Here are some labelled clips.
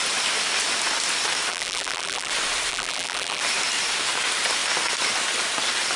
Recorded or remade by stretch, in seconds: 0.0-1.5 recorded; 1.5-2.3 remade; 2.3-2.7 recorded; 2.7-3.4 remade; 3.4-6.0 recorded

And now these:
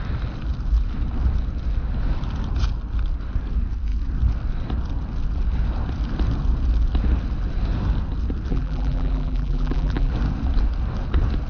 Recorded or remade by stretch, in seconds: 0.0-8.5 recorded; 8.5-10.1 remade; 10.1-11.5 recorded

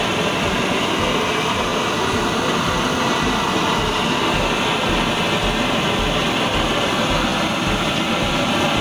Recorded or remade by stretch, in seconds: 0.0-8.8 recorded

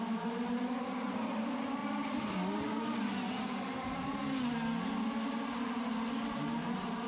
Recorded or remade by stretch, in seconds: 0.0-7.1 recorded